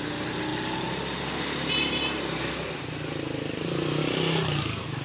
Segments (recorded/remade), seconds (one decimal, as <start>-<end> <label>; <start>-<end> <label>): 0.0-5.0 recorded